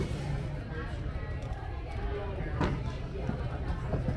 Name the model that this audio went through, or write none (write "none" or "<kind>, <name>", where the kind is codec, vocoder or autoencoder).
none